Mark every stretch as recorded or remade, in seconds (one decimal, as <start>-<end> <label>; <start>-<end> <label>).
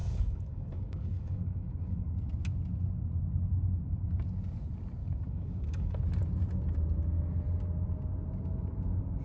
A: 0.0-1.7 remade; 1.7-5.0 recorded; 5.0-6.0 remade; 6.0-9.2 recorded